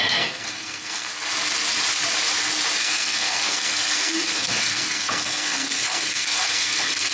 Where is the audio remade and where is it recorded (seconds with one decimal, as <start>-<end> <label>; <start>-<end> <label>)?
0.0-1.1 remade; 1.1-2.8 recorded; 2.8-7.1 remade